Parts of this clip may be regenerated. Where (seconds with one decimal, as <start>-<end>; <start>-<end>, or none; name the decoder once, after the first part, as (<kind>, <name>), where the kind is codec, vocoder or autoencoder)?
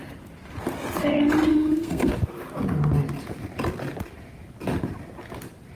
1.5-2.1 (codec, SNAC)